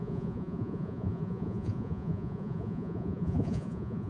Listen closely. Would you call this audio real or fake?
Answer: fake